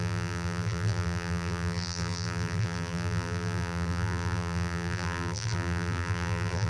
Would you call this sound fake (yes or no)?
yes